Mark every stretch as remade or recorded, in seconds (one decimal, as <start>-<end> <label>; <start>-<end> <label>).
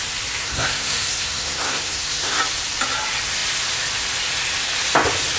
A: 0.0-0.4 recorded; 0.4-2.4 remade; 2.4-5.4 recorded